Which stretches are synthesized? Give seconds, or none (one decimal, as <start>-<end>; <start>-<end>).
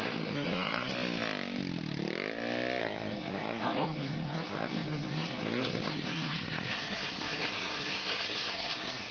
0.0-0.9; 2.8-9.1